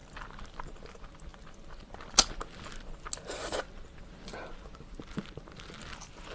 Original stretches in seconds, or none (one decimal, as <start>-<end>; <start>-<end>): 0.0-6.3